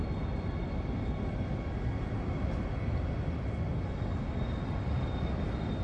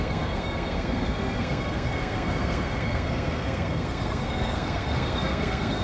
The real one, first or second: first